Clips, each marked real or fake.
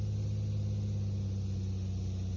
real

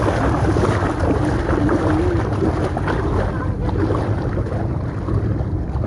real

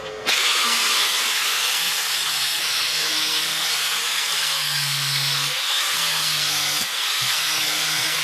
fake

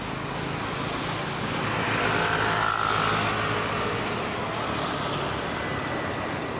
real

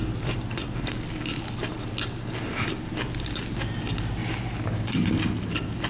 real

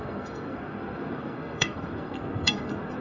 fake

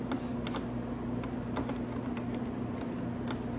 real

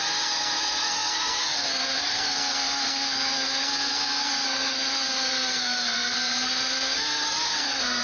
fake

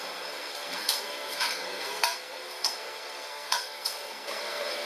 fake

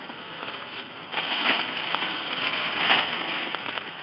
fake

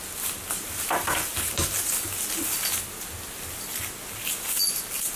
real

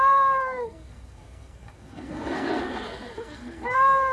fake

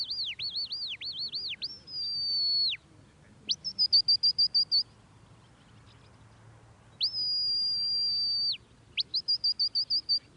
real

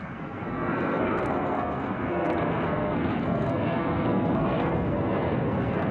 fake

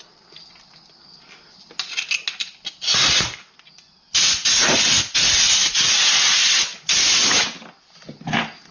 real